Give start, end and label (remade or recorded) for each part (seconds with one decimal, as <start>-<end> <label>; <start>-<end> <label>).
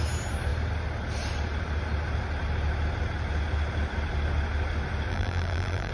0.0-5.1 recorded; 5.1-5.9 remade